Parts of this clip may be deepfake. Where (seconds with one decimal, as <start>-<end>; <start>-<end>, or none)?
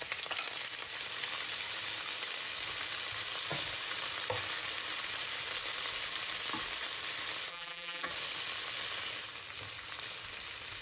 7.5-8.1